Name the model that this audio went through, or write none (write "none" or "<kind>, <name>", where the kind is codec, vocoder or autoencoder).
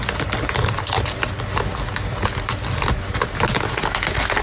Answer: none